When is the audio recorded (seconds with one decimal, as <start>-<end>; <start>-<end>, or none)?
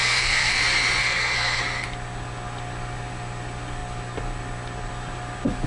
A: 0.6-1.0; 1.6-5.7